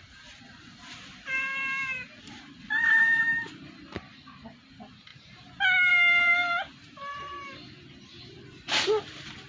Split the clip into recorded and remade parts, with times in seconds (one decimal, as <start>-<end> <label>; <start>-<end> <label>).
0.0-1.5 remade; 1.5-2.2 recorded; 2.2-5.1 remade; 5.1-5.9 recorded; 5.9-9.5 remade